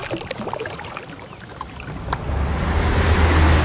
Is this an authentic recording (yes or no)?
yes